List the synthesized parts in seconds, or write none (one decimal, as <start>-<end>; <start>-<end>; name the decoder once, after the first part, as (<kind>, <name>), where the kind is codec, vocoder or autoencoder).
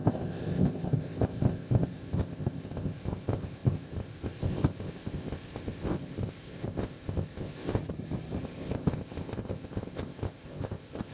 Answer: 0.0-7.8 (codec, ZipCodec); 8.4-11.1